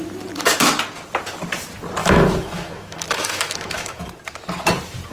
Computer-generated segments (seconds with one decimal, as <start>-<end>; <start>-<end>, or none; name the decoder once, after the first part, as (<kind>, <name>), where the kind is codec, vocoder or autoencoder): 2.0-4.0 (autoencoder, DAC-VAE)